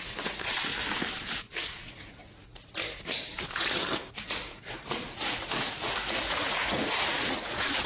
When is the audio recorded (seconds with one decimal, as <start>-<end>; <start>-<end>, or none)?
0.7-1.3